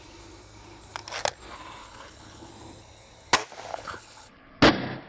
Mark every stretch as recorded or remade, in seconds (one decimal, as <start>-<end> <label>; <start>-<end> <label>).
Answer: 0.0-1.8 recorded; 1.8-2.5 remade; 2.5-3.7 recorded; 3.7-4.5 remade; 4.5-5.1 recorded